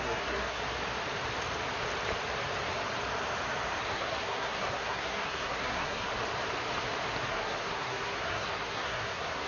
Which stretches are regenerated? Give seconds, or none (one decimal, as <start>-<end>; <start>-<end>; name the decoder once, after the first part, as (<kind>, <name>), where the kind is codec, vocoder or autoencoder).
0.0-0.6 (codec, SNAC); 3.9-6.1; 7.3-9.5